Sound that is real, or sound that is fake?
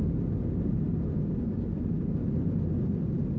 real